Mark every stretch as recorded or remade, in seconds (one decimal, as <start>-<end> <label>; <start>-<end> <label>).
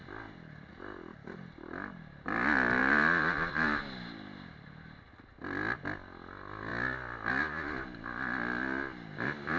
0.0-9.6 recorded